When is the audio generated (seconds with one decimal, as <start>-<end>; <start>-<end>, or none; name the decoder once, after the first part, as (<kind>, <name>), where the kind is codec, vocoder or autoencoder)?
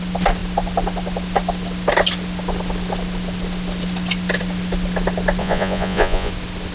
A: 5.4-6.3 (vocoder, Vocos)